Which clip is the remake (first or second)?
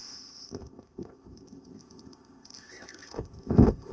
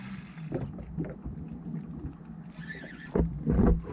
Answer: first